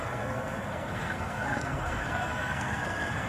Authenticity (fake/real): fake